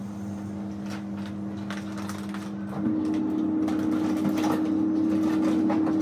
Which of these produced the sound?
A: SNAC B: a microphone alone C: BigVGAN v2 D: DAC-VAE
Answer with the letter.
B